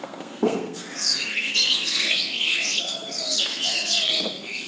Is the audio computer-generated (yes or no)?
yes